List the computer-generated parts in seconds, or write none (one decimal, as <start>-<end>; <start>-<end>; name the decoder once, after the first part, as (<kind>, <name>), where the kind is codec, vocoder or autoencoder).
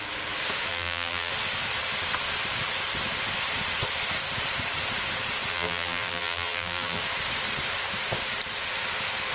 0.7-1.3 (vocoder, BigVGAN v2); 5.5-7.0